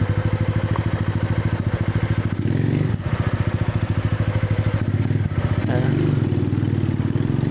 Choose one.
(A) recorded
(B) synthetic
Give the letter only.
A